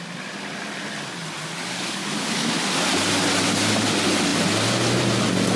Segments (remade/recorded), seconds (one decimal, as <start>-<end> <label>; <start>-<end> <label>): 0.0-1.6 recorded; 1.6-2.6 remade; 2.6-5.6 recorded